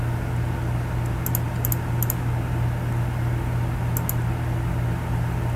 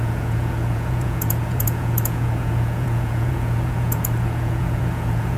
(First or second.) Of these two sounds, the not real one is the second